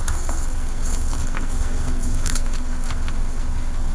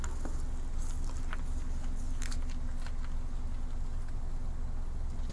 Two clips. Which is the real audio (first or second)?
second